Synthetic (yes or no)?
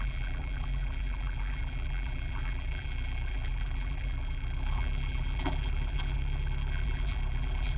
yes